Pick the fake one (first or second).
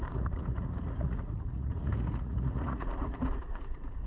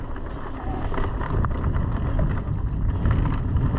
first